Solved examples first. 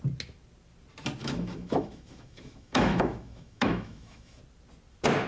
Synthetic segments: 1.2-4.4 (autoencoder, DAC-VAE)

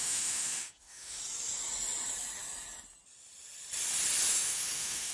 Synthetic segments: 0.0-1.2 (autoencoder, DAC-VAE); 4.3-5.1

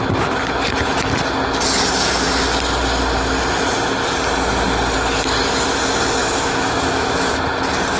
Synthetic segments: 6.2-7.4 (autoencoder, DAC-VAE)

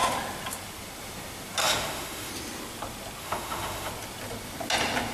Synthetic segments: 1.6-2.3 (autoencoder, DAC-VAE); 3.2-3.9

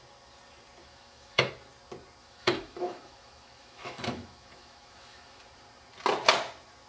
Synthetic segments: 0.8-1.5 (autoencoder, DAC-VAE); 2.2-5.4

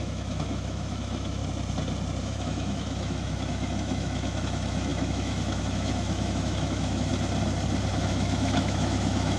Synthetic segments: 0.0-1.4 (autoencoder, DAC-VAE); 2.2-7.1; 7.9-9.4

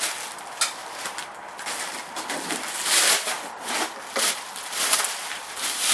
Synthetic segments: none